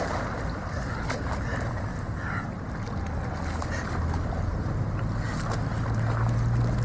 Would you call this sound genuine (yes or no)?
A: yes